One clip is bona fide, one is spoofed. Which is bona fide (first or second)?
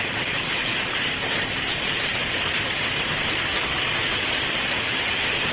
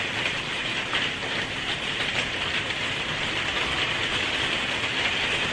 second